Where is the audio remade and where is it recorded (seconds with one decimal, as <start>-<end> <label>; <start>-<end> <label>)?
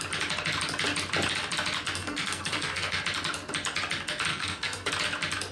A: 0.0-2.0 recorded; 2.0-3.0 remade; 3.0-4.3 recorded; 4.3-4.9 remade; 4.9-5.5 recorded